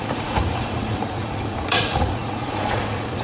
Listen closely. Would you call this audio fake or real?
fake